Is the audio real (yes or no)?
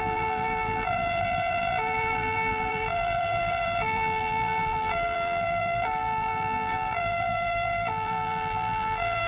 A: no